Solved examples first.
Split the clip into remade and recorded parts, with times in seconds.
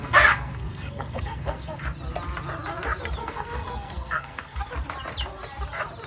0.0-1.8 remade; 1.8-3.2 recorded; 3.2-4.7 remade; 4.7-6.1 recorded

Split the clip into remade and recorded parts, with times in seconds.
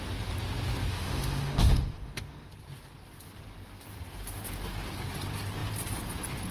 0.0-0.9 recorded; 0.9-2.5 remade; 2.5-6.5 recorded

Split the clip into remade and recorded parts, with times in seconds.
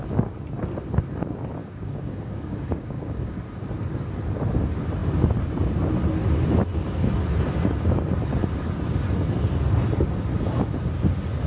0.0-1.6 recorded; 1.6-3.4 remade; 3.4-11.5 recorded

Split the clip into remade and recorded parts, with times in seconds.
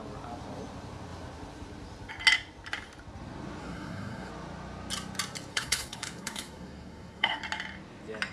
0.0-3.6 recorded; 3.6-4.3 remade; 4.3-5.5 recorded; 5.5-7.4 remade; 7.4-8.3 recorded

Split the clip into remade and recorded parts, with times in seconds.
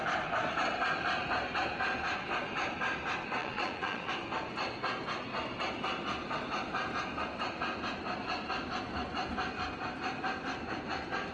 0.0-3.4 recorded; 3.4-4.1 remade; 4.1-11.3 recorded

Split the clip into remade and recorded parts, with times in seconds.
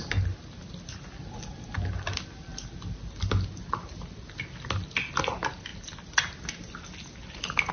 0.0-7.7 recorded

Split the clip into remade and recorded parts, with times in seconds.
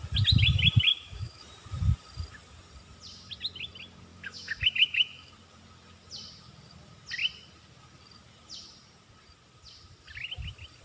0.0-0.9 recorded; 0.9-1.4 remade; 1.4-4.1 recorded; 4.1-5.3 remade; 5.3-10.8 recorded